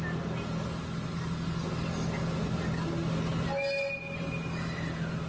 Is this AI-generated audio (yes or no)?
no